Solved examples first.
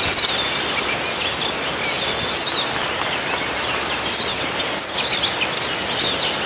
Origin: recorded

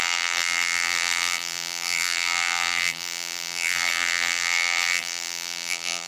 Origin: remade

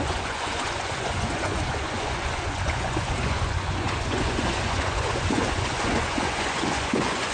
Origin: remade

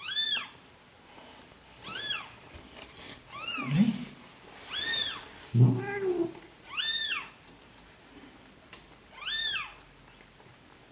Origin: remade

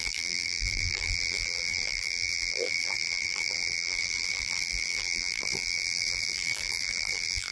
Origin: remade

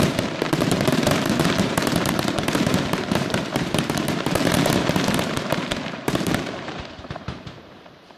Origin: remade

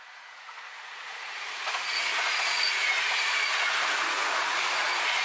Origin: remade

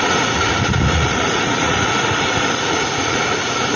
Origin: remade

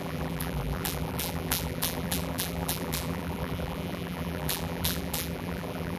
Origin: remade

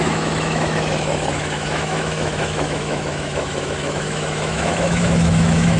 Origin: remade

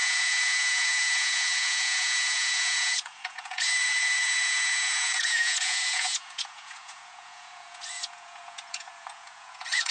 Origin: remade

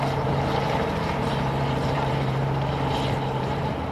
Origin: remade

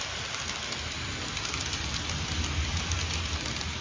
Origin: recorded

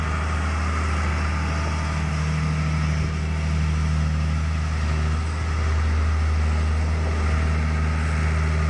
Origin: recorded